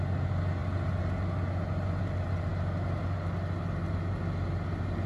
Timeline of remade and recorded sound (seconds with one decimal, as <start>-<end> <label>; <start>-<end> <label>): 0.0-5.1 recorded